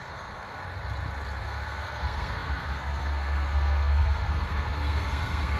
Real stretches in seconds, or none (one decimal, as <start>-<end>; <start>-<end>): 0.6-1.4